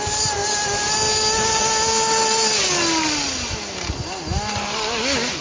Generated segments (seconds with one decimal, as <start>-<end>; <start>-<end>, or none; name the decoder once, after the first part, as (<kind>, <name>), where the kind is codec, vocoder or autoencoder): none